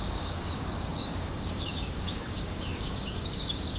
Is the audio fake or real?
fake